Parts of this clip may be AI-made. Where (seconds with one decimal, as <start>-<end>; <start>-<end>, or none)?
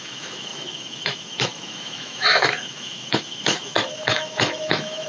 0.0-5.1